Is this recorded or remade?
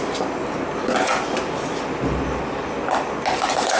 recorded